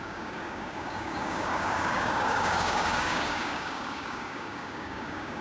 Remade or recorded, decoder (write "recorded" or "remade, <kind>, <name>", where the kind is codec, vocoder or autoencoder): remade, codec, DAC